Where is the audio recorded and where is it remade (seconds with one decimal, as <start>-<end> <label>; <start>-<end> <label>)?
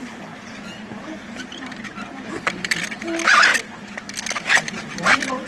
0.0-5.5 recorded